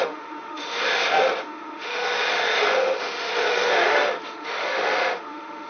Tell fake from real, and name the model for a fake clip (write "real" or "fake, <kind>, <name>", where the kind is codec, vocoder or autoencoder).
fake, autoencoder, DAC-VAE